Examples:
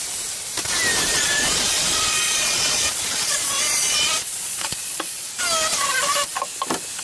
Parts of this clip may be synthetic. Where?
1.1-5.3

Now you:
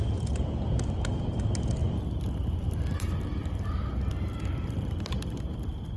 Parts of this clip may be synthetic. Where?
none